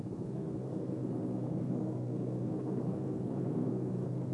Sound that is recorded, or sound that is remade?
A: remade